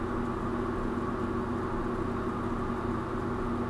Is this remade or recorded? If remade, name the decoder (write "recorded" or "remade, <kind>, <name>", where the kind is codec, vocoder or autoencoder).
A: recorded